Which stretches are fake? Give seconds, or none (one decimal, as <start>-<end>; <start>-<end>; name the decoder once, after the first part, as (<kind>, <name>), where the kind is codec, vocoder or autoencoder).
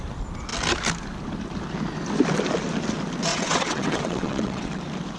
3.3-4.8 (vocoder, WaveNeXt)